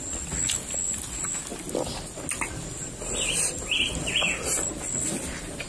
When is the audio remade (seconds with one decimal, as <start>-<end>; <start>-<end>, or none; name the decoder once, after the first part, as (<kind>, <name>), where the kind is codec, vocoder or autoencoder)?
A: none